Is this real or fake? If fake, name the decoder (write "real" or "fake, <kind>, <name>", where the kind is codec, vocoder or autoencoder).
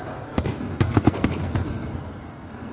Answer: fake, codec, SNAC